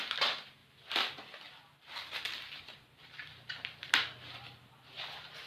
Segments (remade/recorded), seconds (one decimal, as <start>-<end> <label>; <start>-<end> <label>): 0.0-5.5 recorded